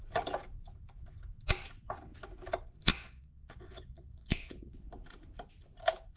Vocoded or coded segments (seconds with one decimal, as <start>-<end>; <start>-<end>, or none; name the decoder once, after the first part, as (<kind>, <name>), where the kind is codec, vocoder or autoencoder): 2.9-4.9 (vocoder, Vocos)